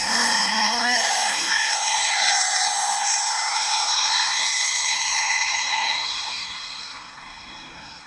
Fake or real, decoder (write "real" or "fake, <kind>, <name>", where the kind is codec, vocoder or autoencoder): fake, codec, SNAC